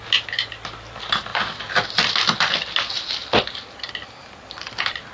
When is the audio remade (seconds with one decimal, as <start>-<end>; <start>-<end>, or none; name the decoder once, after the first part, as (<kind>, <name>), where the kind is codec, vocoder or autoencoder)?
none